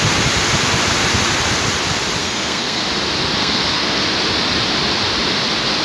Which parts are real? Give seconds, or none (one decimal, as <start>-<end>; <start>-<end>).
0.0-2.2; 2.8-3.4; 4.0-5.8